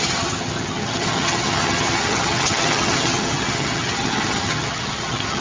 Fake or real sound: fake